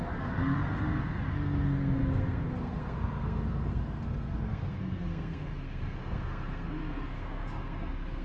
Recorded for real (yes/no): no